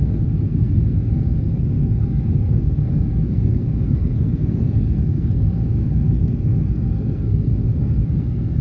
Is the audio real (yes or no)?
no